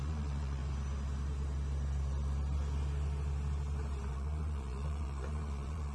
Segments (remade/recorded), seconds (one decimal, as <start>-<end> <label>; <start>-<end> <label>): 0.0-0.6 remade; 0.6-4.1 recorded; 4.1-5.9 remade